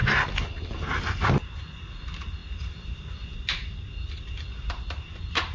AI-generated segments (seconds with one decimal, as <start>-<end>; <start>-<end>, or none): none